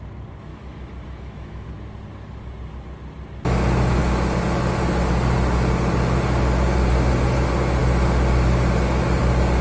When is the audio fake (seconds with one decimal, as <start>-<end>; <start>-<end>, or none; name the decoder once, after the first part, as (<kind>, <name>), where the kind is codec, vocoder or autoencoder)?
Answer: 0.5-1.7 (autoencoder, DAC-VAE)